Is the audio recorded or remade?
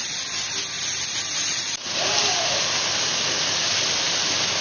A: recorded